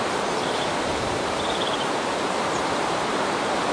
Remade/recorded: remade